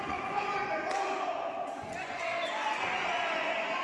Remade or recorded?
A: remade